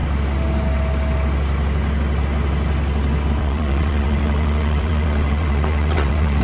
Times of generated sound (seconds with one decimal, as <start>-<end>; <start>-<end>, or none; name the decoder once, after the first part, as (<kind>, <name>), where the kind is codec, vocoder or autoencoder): 3.4-6.4 (vocoder, WaveNeXt)